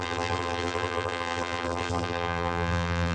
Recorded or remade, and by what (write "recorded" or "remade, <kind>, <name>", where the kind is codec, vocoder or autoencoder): remade, vocoder, BigVGAN v2